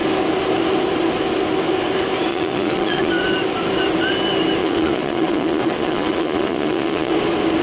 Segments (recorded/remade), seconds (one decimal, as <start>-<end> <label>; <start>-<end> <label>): 0.0-2.3 recorded; 2.3-3.1 remade; 3.1-4.6 recorded; 4.6-7.1 remade; 7.1-7.6 recorded